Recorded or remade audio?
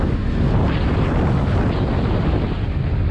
recorded